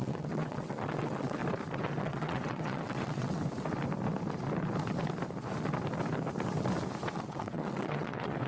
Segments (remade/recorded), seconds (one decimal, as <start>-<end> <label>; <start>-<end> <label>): 0.0-1.4 remade; 1.4-2.0 recorded; 2.0-3.4 remade; 3.4-7.1 recorded; 7.1-8.5 remade